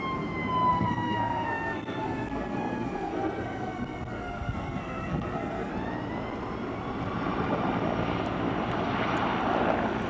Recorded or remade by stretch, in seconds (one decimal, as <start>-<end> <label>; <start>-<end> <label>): 0.0-0.7 recorded; 0.7-5.7 remade; 5.7-10.1 recorded